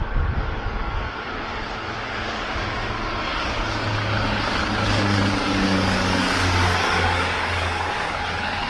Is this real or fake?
fake